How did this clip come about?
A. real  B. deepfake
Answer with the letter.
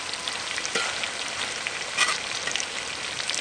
A